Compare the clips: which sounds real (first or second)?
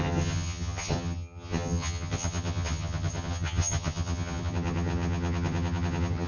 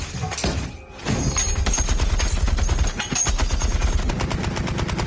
second